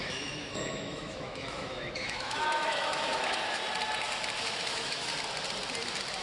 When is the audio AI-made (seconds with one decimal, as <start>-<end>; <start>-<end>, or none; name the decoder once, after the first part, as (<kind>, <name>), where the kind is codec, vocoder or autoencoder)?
0.0-3.6 (autoencoder, DAC-VAE); 4.5-5.1

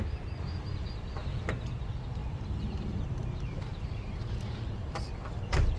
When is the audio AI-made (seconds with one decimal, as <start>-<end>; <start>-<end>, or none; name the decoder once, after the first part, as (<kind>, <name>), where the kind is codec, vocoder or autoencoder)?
0.0-1.2 (vocoder, BigVGAN v2); 1.7-5.8

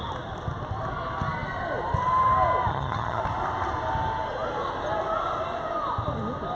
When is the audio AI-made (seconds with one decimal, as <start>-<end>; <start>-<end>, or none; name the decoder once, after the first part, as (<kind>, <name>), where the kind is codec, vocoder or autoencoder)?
2.7-3.2 (vocoder, HiFi-GAN)

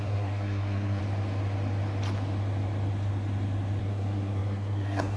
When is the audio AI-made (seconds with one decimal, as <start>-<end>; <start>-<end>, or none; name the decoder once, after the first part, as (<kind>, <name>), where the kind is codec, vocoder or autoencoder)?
0.0-1.0 (codec, SNAC); 3.8-5.2

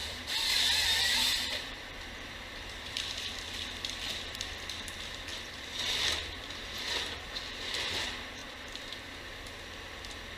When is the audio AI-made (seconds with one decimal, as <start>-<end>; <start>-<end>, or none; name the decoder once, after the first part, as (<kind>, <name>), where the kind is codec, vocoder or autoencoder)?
0.0-4.6 (vocoder, BigVGAN v2); 5.3-6.9; 8.4-9.0

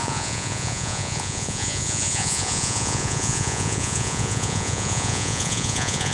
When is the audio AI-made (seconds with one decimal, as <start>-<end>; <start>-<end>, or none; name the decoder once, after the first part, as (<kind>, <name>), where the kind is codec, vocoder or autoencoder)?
0.0-6.1 (vocoder, Vocos)

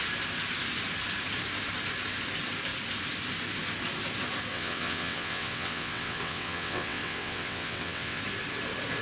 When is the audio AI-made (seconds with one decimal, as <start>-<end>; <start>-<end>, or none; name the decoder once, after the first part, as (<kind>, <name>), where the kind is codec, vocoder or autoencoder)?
4.5-8.2 (vocoder, WaveNeXt)

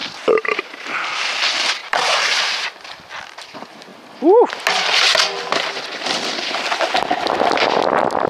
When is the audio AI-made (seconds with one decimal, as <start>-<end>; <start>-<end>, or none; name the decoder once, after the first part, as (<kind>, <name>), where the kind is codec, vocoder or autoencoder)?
1.8-2.7 (vocoder, BigVGAN v2)